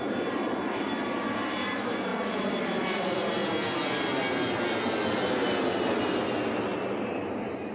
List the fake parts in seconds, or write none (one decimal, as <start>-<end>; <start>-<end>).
0.0-3.4; 7.0-7.7